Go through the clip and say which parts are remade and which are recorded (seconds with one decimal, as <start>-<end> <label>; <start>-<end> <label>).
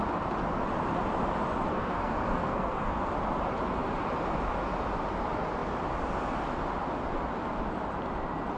0.0-1.7 recorded; 1.7-3.1 remade; 3.1-8.6 recorded